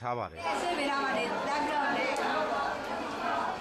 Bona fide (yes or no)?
yes